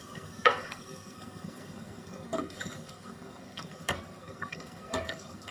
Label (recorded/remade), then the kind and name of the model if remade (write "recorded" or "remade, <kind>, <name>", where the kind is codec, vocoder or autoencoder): remade, codec, SNAC